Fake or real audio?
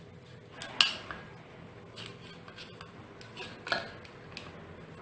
real